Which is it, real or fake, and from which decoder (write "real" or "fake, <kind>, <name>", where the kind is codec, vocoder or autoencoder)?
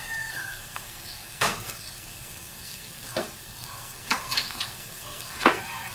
fake, codec, SNAC